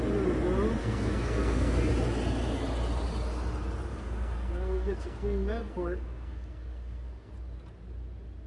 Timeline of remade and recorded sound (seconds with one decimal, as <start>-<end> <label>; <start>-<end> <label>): 0.0-0.8 recorded; 0.8-1.9 remade; 1.9-3.9 recorded; 3.9-7.3 remade; 7.3-8.5 recorded